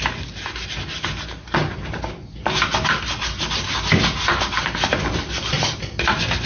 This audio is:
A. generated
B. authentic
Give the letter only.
B